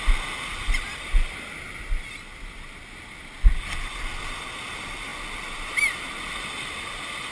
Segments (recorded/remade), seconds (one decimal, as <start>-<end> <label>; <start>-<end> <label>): 0.0-7.3 recorded